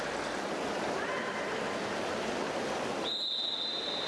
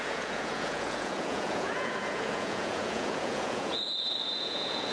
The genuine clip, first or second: first